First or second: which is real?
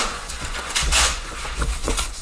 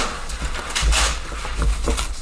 second